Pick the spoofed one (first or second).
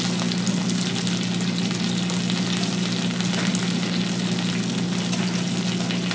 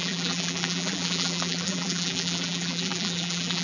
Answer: second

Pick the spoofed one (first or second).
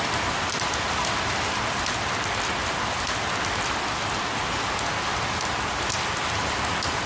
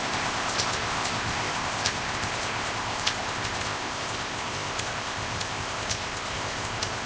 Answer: second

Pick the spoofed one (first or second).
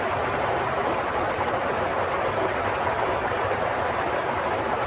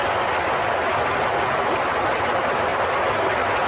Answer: first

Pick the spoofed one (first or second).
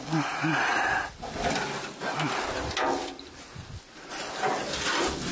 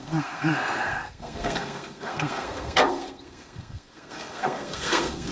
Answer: second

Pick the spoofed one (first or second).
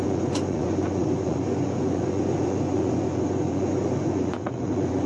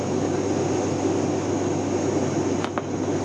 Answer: first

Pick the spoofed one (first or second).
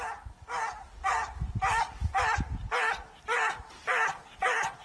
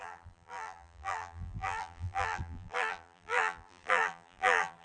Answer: second